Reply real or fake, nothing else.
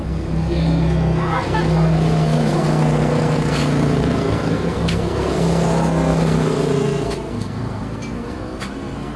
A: fake